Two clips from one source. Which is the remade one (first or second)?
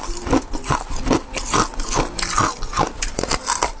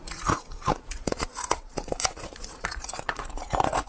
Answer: second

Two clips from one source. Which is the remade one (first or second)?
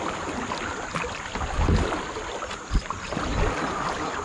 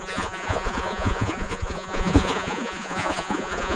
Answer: second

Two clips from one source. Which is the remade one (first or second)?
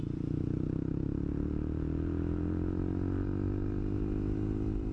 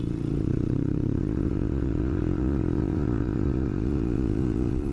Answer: second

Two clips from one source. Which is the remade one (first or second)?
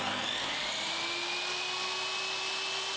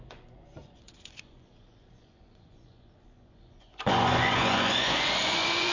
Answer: second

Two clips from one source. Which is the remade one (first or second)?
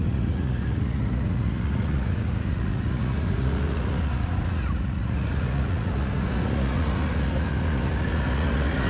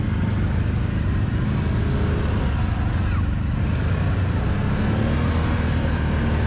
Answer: first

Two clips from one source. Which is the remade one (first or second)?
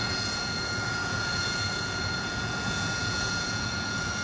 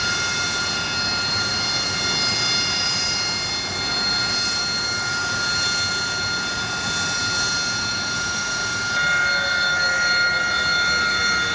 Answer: first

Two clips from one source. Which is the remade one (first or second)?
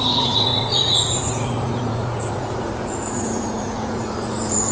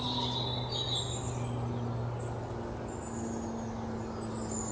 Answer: first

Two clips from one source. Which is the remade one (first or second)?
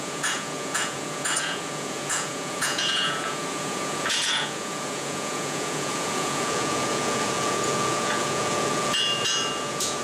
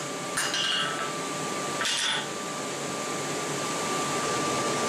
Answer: first